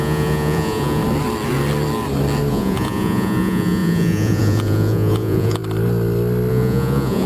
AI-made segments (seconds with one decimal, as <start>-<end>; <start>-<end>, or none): 0.0-1.0; 2.5-5.6; 6.5-7.3